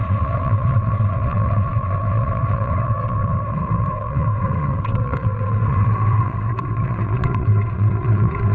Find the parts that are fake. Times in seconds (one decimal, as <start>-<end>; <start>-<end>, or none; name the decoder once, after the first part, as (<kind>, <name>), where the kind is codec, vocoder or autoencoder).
0.0-8.5 (vocoder, WaveNeXt)